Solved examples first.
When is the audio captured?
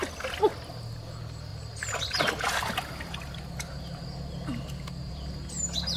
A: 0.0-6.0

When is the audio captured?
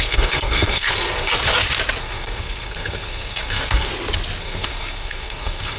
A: 1.3-2.0; 3.9-4.4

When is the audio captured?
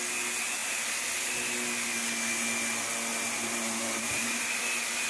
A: 0.0-3.1; 4.6-5.1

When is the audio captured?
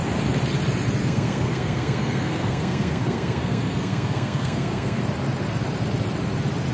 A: 0.0-1.0; 5.0-6.7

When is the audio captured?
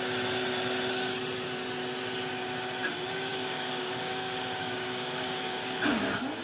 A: 0.0-3.3; 6.0-6.4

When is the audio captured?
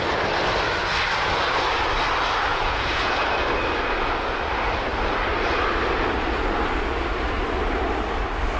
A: 0.0-2.5; 3.2-8.6